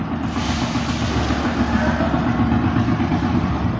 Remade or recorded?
recorded